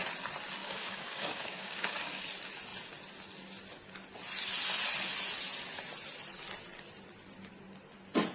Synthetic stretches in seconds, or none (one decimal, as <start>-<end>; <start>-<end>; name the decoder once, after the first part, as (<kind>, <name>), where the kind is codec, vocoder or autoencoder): 0.6-2.2 (codec, DAC)